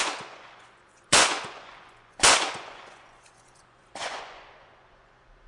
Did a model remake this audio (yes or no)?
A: yes